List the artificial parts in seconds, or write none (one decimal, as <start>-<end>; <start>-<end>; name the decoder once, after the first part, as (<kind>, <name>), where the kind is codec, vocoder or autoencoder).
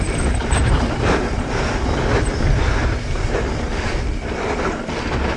0.4-1.5 (vocoder, BigVGAN v2)